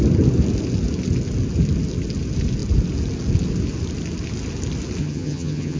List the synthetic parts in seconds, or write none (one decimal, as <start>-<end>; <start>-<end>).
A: 5.0-5.8